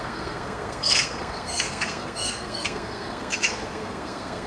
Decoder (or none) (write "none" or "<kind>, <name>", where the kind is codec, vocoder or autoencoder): codec, SNAC